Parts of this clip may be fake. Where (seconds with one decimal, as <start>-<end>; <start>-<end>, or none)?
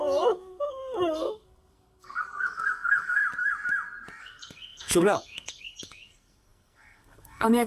0.0-3.2; 4.2-7.7